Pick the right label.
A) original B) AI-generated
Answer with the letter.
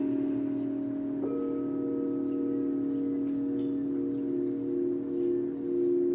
A